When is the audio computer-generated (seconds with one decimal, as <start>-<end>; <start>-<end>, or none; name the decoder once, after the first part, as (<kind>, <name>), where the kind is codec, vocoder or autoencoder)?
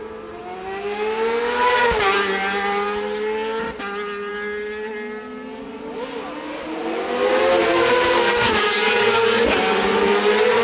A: none